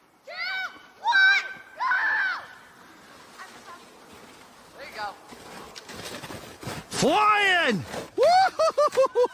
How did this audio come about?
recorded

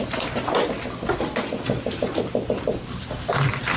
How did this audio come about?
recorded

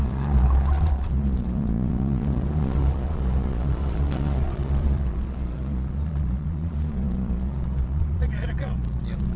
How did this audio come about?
remade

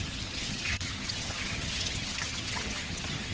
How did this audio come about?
remade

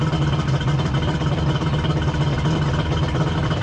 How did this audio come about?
remade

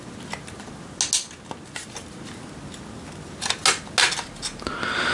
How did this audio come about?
recorded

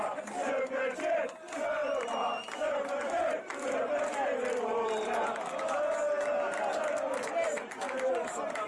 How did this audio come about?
recorded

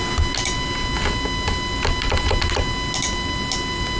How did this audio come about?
recorded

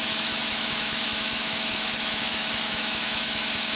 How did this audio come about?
remade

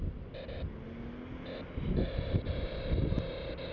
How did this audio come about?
recorded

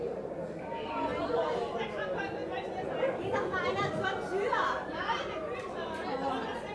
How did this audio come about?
recorded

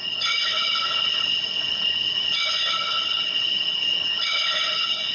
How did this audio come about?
remade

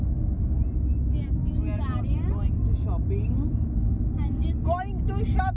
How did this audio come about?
recorded